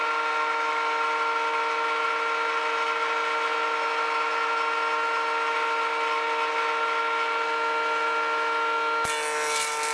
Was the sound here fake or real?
real